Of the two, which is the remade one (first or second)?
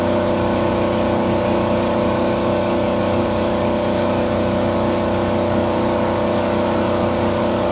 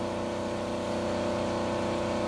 first